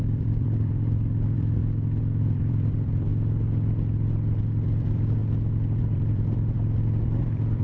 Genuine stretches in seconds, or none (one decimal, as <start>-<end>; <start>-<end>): 1.6-2.2; 3.1-4.4; 5.2-5.8

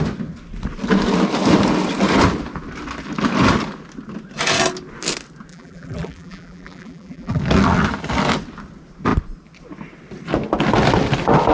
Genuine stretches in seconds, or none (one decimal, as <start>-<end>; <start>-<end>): 0.0-5.5; 7.4-11.5

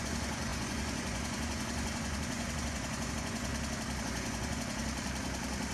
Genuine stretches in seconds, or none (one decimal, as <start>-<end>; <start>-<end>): 3.5-4.0; 4.8-5.7

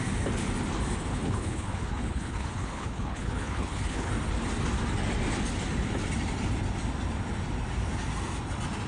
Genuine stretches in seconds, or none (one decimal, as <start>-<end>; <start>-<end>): 0.0-1.1; 4.1-8.9